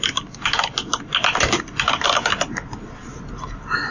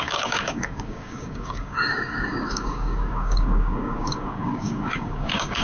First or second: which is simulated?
second